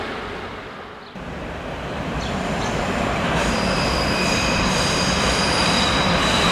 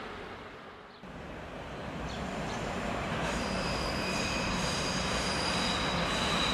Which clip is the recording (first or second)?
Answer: second